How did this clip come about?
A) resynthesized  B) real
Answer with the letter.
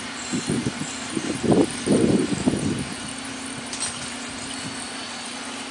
B